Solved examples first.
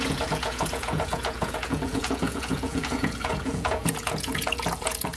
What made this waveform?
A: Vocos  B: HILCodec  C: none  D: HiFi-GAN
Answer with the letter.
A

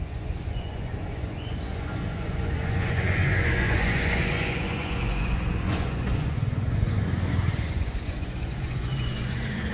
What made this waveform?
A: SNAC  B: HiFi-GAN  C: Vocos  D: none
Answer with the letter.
C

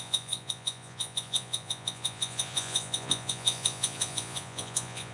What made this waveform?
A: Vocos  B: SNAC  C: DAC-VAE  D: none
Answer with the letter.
A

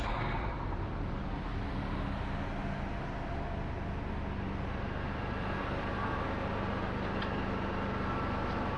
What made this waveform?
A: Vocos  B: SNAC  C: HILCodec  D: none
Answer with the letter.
D